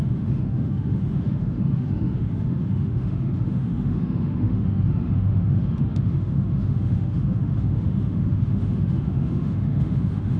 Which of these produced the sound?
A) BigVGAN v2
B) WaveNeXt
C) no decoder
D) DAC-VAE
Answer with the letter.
D